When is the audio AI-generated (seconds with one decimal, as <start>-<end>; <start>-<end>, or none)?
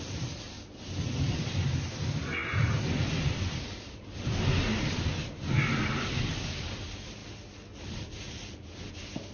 none